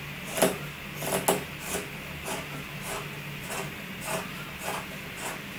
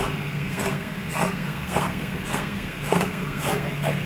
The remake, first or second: second